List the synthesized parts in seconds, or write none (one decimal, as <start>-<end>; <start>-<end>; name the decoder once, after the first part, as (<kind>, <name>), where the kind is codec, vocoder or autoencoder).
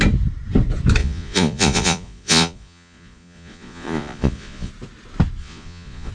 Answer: 1.0-4.7 (vocoder, Vocos); 5.4-6.1